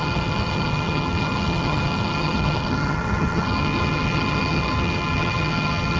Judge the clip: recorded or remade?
remade